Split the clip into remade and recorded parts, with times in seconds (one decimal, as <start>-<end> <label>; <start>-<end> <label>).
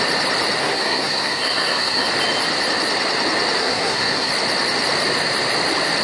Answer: 0.0-0.6 recorded; 0.6-2.1 remade; 2.1-3.6 recorded; 3.6-4.3 remade; 4.3-6.0 recorded